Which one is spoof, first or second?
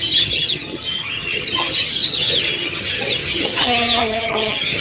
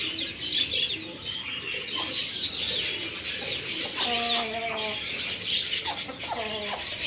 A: first